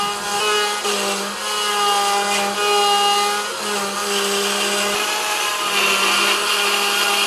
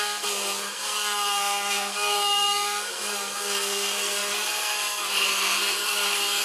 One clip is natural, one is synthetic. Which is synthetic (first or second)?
second